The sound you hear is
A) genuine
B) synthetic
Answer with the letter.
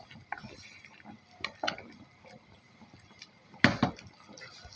A